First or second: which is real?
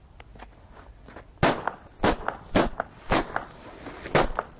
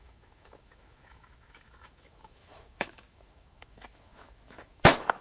first